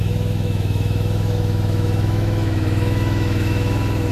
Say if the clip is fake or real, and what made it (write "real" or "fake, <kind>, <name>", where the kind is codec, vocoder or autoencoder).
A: fake, autoencoder, DAC-VAE